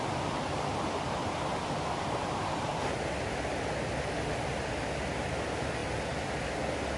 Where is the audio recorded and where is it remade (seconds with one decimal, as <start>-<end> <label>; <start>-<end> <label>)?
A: 0.0-7.0 recorded